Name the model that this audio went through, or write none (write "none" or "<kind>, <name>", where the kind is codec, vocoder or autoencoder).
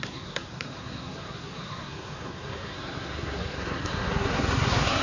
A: codec, SNAC